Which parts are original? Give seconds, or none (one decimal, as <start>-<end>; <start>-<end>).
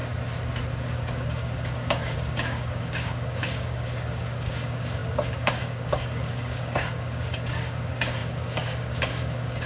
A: 0.0-0.8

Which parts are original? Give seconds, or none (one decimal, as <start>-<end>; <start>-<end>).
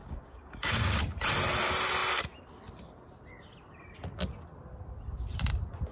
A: 1.0-5.9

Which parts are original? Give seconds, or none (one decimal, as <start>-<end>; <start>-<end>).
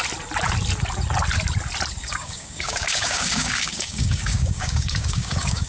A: 0.0-2.0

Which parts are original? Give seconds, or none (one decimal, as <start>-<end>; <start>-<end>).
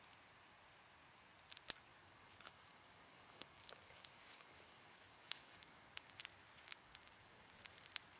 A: 0.0-1.9; 6.2-6.7; 7.7-8.2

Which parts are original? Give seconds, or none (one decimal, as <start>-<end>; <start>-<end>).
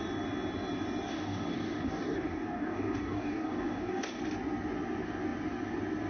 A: 0.0-1.1; 4.2-6.1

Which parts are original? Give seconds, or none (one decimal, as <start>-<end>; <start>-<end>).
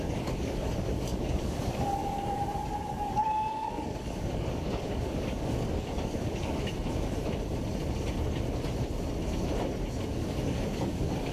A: 7.2-10.0